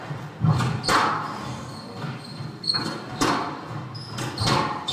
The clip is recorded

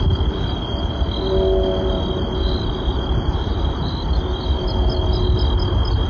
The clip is recorded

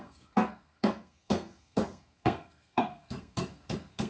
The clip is remade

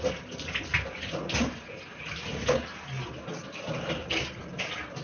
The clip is recorded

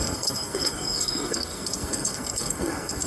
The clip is remade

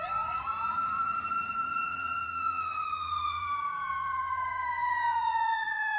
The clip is remade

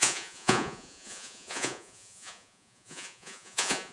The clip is remade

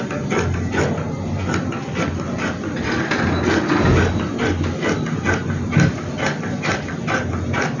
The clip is recorded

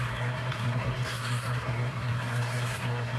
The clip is remade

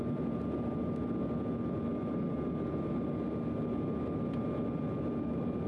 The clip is recorded